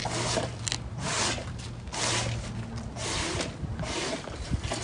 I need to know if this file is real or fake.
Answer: real